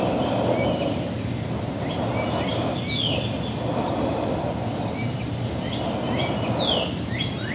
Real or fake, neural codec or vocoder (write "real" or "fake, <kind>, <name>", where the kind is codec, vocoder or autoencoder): real